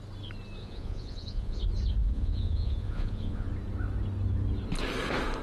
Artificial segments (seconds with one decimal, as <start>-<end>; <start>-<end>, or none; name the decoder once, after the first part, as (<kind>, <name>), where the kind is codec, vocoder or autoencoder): 0.6-1.6 (vocoder, Vocos); 2.0-3.5